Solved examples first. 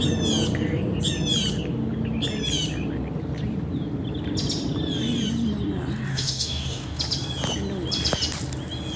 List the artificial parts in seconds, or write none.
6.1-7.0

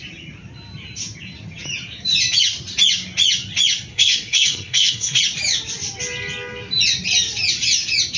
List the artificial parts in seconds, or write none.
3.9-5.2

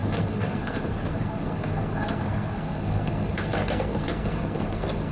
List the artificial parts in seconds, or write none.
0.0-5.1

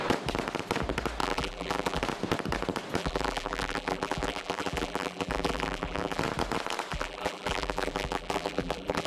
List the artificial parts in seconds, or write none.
1.2-2.0; 3.0-6.2; 6.9-9.1

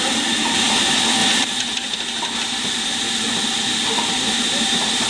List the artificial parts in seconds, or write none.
0.0-1.2; 4.3-5.1